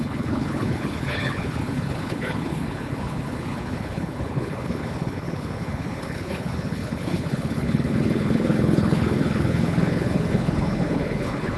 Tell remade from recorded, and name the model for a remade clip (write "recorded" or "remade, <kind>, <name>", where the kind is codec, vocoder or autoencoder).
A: remade, codec, HILCodec